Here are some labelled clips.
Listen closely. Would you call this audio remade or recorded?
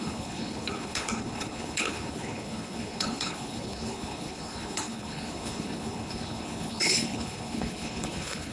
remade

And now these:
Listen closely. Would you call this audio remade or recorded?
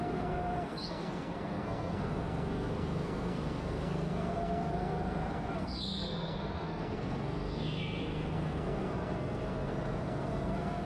remade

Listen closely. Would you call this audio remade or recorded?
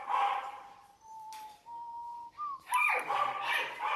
recorded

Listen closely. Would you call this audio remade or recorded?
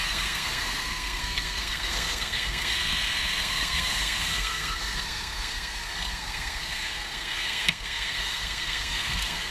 remade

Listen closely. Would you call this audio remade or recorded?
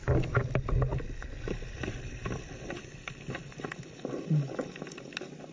recorded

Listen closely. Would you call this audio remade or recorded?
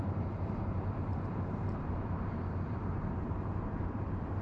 remade